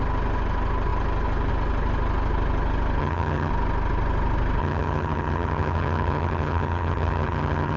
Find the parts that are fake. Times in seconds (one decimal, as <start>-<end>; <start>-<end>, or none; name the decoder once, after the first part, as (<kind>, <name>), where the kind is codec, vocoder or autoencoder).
3.0-3.5 (vocoder, HiFi-GAN); 4.6-7.8